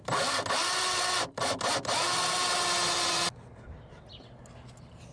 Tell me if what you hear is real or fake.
real